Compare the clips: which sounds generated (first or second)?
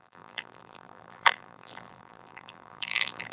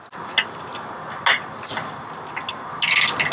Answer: first